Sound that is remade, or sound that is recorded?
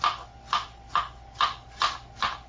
recorded